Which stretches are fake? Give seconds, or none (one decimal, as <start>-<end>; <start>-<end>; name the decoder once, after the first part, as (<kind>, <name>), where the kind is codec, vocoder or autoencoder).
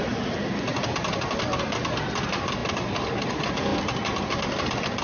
none